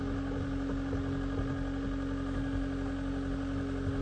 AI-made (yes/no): no